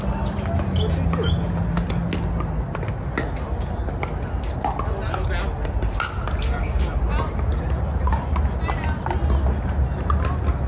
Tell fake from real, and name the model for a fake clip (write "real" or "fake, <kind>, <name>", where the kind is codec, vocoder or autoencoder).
real